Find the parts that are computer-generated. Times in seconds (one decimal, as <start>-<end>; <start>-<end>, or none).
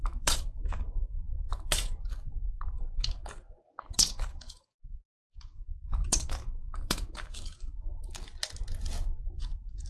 0.0-8.3; 9.0-9.9